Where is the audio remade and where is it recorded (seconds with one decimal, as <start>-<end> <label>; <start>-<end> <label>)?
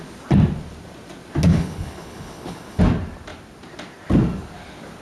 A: 0.0-1.5 recorded; 1.5-2.8 remade; 2.8-5.0 recorded